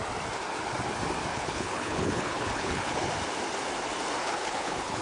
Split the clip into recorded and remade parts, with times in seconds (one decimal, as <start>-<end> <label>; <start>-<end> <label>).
0.0-1.3 recorded; 1.3-3.1 remade; 3.1-4.2 recorded; 4.2-5.0 remade